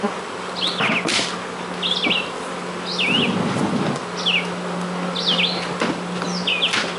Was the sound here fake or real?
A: real